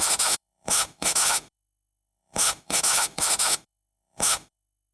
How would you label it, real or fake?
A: fake